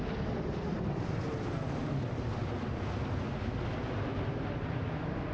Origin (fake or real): real